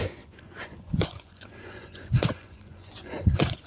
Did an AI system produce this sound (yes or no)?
yes